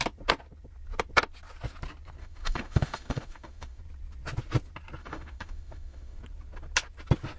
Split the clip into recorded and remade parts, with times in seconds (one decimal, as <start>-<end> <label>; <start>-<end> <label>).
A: 0.0-2.2 recorded; 2.2-3.8 remade; 3.8-5.0 recorded; 5.0-6.2 remade; 6.2-7.4 recorded